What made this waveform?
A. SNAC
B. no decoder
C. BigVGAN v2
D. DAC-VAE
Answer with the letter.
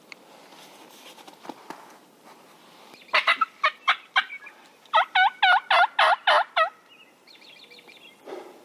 B